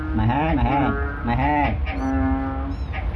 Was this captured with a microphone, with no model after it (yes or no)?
yes